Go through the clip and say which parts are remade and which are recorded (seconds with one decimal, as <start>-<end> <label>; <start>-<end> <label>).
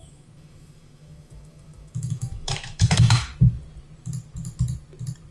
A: 0.0-3.3 remade; 3.3-5.3 recorded